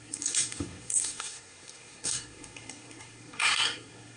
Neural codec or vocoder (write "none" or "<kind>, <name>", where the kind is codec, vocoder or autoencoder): codec, SNAC